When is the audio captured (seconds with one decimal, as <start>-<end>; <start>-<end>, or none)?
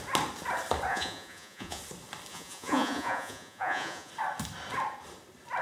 0.0-0.9; 1.8-2.3; 4.1-5.6